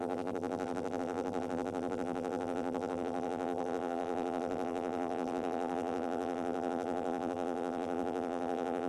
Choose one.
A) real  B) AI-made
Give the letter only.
B